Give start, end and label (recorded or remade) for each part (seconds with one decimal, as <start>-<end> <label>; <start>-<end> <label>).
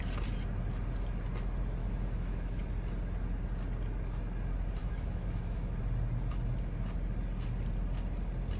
0.0-1.8 recorded; 1.8-2.6 remade; 2.6-4.8 recorded; 4.8-5.8 remade; 5.8-8.6 recorded